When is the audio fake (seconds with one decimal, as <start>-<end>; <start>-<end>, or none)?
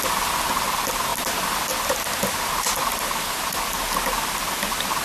none